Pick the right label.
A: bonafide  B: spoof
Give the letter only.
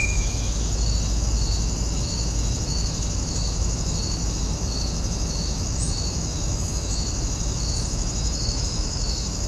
B